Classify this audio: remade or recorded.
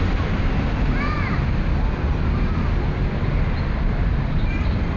recorded